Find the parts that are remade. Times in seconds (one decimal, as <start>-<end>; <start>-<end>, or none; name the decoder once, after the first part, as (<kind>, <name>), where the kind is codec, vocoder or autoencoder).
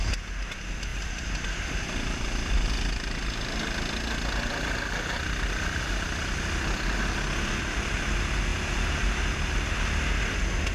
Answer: 0.9-2.5 (vocoder, BigVGAN v2); 8.5-9.2